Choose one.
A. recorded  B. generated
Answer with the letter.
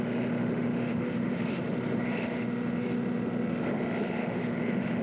B